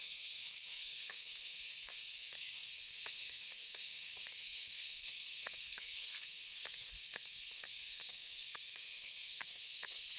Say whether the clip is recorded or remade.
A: remade